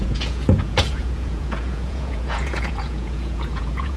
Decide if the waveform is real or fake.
fake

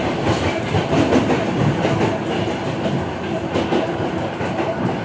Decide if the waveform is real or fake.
real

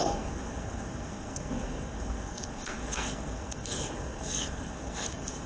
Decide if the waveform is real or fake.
fake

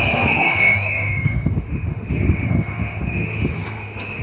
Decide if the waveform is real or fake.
fake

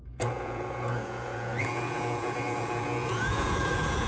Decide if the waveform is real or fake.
fake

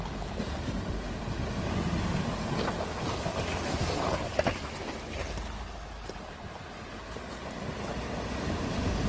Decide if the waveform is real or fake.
real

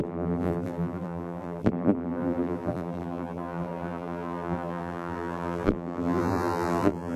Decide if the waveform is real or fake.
fake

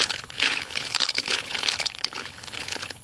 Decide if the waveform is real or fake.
fake